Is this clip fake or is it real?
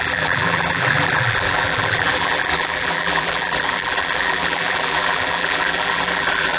fake